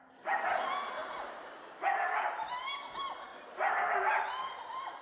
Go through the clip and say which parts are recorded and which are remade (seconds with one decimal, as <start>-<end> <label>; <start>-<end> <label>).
0.0-5.0 recorded